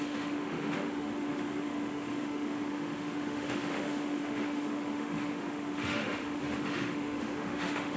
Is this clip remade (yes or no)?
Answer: yes